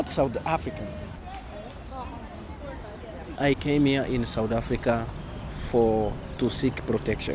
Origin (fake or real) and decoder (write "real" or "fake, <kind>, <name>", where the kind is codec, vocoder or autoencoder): real